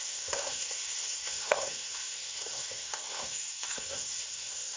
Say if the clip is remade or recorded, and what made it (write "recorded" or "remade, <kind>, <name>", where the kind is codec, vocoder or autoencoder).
remade, codec, SNAC